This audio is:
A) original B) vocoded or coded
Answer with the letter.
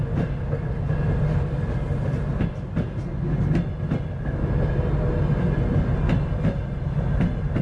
A